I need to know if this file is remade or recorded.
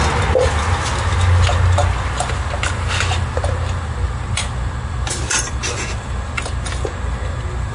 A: recorded